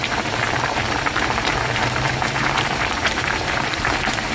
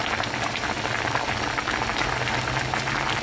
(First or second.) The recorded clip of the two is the second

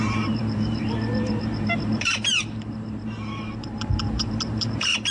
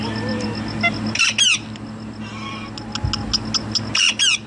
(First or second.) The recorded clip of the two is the second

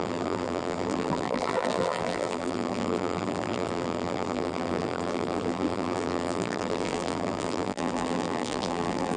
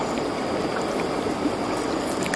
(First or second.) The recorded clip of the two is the second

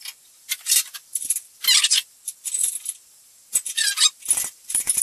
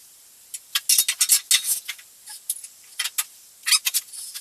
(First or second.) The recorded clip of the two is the second